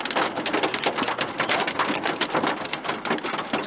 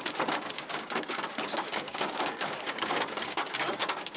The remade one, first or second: second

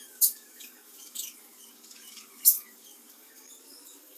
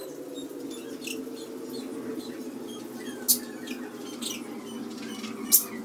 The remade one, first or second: first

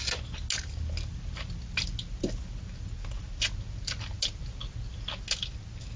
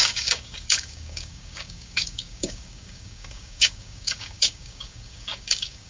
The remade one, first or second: second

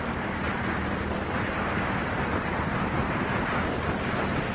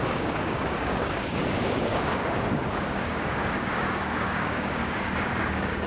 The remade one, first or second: second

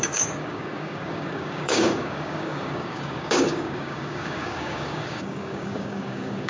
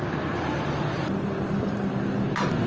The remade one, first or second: first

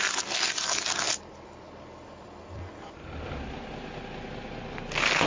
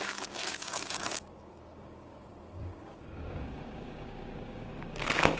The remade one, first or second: second